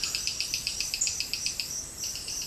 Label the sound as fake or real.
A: real